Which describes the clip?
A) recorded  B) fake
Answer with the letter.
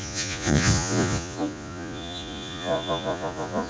B